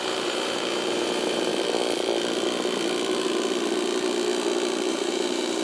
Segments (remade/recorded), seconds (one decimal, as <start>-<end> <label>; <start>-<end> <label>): 0.0-1.5 remade; 1.5-4.9 recorded; 4.9-5.6 remade